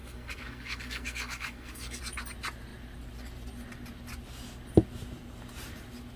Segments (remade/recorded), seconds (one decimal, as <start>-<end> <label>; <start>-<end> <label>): 0.0-2.0 remade; 2.0-6.2 recorded